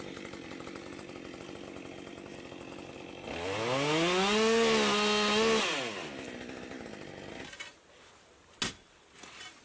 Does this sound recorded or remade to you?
recorded